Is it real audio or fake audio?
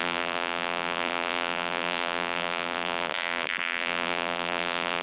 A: fake